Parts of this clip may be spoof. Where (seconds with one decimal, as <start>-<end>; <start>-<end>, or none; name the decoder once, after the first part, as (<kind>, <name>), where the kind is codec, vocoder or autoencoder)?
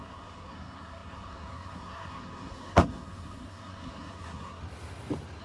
0.0-4.6 (codec, SNAC)